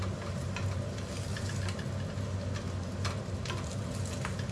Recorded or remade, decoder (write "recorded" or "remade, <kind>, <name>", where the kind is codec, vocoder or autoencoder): recorded